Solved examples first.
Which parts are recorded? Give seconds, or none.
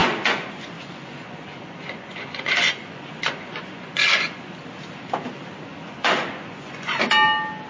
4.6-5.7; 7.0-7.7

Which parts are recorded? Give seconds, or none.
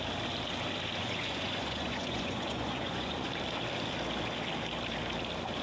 0.0-1.0; 3.3-5.6